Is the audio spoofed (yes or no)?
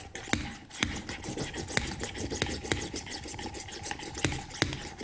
no